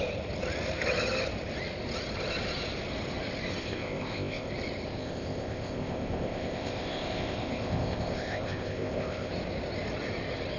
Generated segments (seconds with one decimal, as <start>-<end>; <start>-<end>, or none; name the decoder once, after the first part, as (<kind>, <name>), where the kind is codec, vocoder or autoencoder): 3.6-4.5 (codec, ZipCodec); 5.0-9.3